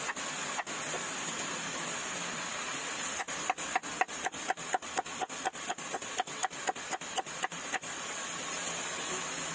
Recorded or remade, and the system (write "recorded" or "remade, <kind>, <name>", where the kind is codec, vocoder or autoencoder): recorded